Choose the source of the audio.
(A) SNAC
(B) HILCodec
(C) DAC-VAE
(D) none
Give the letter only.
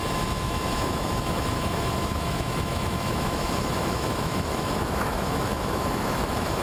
C